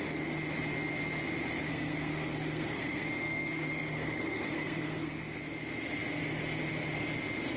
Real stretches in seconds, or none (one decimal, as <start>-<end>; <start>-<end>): 0.0-1.7; 5.4-7.6